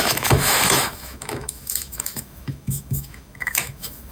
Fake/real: fake